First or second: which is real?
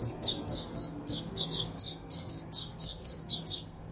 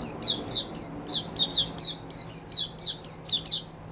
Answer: second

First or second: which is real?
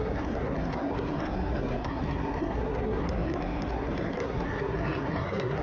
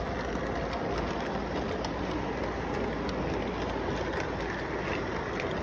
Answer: second